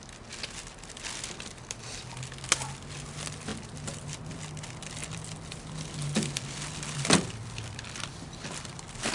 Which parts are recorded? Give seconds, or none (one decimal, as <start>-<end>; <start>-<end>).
0.0-3.5; 4.4-5.0